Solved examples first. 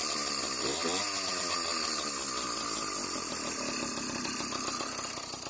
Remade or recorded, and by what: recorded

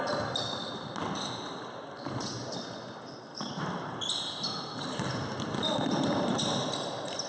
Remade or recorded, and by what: recorded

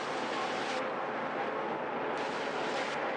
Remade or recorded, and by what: recorded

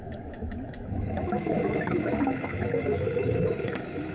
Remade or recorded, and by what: remade, autoencoder, DAC-VAE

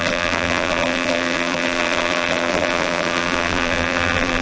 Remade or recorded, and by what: remade, vocoder, BigVGAN v2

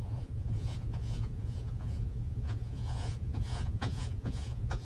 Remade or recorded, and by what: remade, vocoder, Vocos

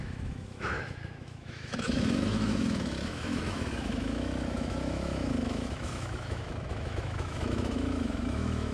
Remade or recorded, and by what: remade, autoencoder, DAC-VAE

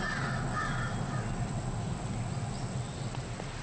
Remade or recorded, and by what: recorded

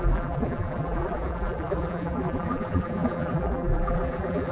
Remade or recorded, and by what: remade, vocoder, BigVGAN v2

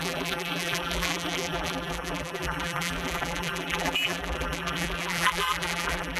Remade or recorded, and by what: remade, vocoder, BigVGAN v2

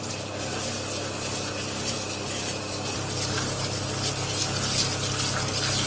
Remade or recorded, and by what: recorded